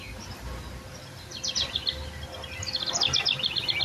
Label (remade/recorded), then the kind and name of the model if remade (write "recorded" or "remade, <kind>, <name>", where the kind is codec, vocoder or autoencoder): recorded